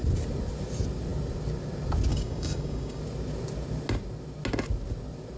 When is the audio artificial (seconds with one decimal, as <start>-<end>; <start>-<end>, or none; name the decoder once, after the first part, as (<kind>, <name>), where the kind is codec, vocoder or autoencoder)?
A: 2.1-3.0 (codec, DAC)